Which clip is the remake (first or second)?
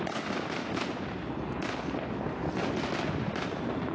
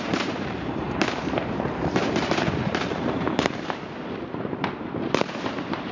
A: second